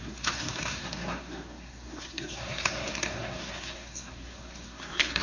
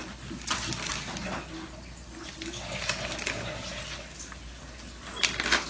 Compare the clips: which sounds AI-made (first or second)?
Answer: first